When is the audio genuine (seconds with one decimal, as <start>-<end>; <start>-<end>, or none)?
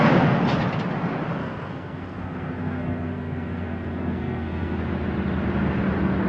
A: 0.0-1.4; 4.8-6.3